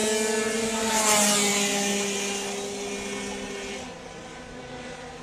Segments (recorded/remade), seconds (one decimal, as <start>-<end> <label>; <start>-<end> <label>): 0.0-5.2 recorded